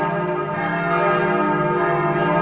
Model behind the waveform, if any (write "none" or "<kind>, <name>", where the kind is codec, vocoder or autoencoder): none